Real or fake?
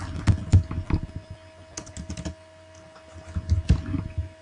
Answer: real